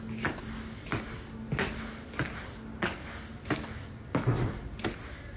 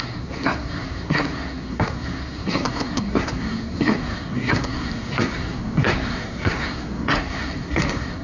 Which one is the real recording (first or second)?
first